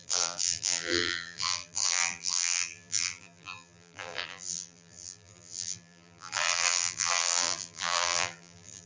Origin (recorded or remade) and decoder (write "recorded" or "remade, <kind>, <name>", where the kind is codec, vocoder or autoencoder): remade, vocoder, BigVGAN v2